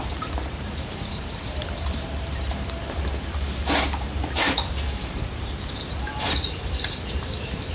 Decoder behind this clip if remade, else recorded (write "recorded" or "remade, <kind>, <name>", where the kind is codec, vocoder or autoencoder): remade, vocoder, BigVGAN v2